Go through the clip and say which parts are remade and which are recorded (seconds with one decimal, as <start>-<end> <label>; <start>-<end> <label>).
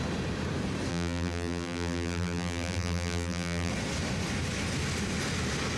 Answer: 0.0-0.9 recorded; 0.9-3.7 remade; 3.7-5.8 recorded